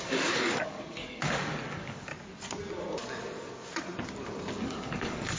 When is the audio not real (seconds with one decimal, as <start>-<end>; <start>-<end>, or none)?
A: 0.0-2.1; 4.5-5.4